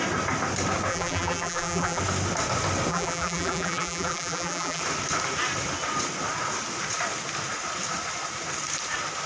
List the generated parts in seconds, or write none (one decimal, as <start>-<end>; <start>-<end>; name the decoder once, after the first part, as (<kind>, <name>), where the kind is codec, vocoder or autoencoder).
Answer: 0.9-2.0 (vocoder, BigVGAN v2); 2.9-4.8